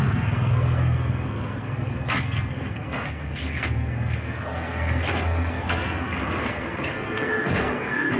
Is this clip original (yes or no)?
no